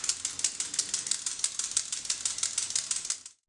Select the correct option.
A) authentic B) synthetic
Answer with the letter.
A